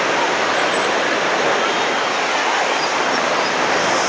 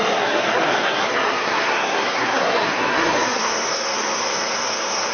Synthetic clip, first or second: second